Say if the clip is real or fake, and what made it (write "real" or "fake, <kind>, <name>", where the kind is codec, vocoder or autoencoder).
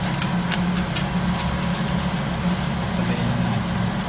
real